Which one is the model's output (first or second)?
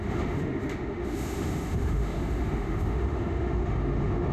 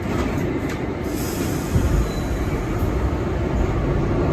first